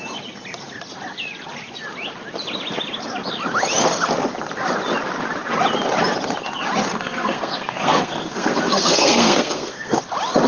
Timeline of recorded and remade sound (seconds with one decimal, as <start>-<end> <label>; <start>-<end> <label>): 0.0-6.9 recorded; 6.9-10.0 remade; 10.0-10.5 recorded